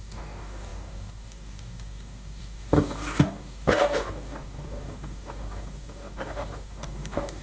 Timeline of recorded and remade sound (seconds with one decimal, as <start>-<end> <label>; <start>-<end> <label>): 0.0-7.4 remade

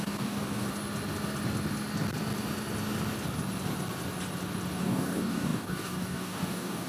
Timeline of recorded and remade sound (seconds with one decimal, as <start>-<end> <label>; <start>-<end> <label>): 0.0-0.7 remade; 0.7-4.8 recorded; 4.8-6.9 remade

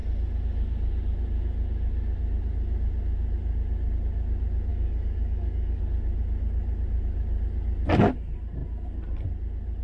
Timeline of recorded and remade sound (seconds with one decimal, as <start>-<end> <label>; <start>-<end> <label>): 0.0-4.7 recorded; 4.7-5.8 remade; 5.8-9.8 recorded

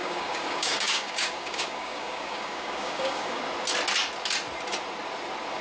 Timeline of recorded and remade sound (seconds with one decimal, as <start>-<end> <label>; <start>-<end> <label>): 0.0-3.4 remade; 3.4-5.6 recorded